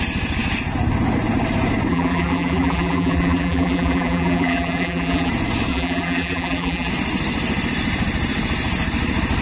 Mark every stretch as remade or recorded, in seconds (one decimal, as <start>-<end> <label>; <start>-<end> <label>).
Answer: 0.0-1.9 recorded; 1.9-5.3 remade; 5.3-5.7 recorded; 5.7-6.9 remade; 6.9-9.4 recorded